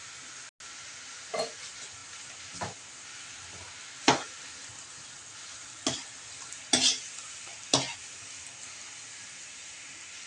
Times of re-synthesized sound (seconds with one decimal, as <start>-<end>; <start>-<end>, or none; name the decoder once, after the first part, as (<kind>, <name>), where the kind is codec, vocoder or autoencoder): none